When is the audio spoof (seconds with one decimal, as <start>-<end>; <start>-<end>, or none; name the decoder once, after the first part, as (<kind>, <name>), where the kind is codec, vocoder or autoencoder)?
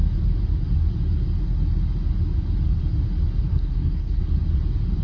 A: 3.5-4.2 (codec, SNAC)